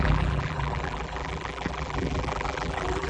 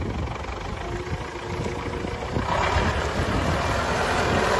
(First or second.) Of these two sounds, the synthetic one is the first